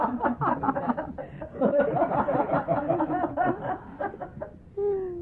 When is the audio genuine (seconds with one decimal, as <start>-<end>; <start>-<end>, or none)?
0.0-1.2; 4.1-5.2